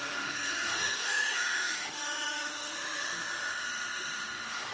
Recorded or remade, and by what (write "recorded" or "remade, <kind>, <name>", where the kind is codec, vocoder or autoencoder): remade, autoencoder, DAC-VAE